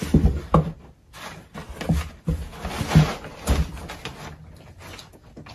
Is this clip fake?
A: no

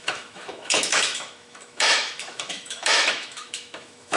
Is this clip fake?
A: yes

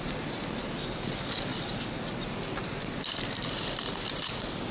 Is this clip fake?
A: no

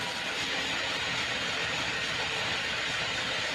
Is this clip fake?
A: no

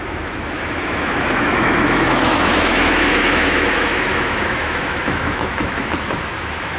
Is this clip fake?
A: yes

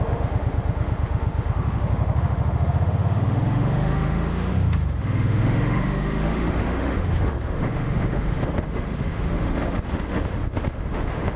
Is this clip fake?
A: yes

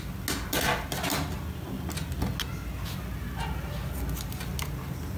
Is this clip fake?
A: no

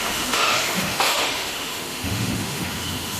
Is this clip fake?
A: yes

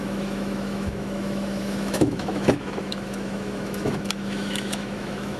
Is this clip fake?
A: yes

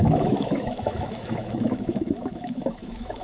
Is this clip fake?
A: yes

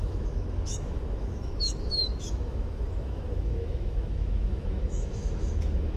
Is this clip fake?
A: yes